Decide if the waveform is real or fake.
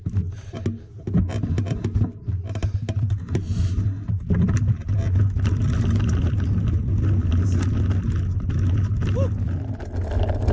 real